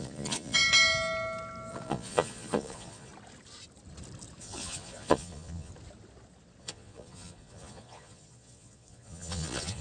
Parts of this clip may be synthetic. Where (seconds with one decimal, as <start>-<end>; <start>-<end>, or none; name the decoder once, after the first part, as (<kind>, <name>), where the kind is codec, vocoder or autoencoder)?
0.0-0.6 (vocoder, Vocos); 1.7-3.1; 4.4-5.7; 6.6-9.8